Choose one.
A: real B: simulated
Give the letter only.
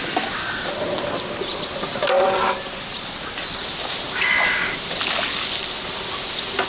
A